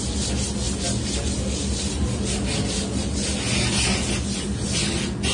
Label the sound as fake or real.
real